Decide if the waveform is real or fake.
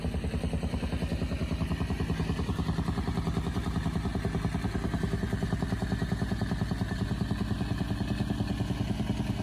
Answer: real